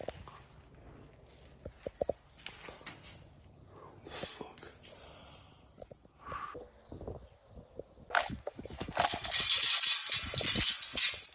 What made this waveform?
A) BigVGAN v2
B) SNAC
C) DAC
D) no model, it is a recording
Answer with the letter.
D